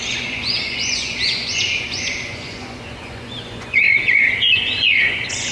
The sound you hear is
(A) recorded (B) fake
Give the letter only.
B